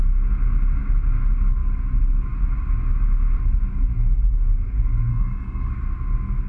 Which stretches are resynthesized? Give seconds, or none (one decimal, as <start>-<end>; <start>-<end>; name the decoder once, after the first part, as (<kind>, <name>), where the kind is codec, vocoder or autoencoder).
5.1-5.7 (codec, HILCodec)